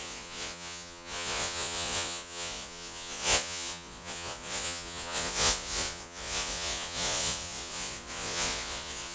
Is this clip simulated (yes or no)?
yes